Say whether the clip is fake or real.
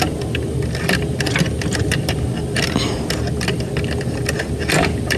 real